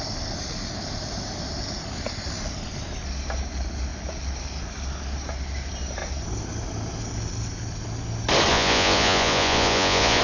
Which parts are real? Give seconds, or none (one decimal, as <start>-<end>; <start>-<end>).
0.0-8.5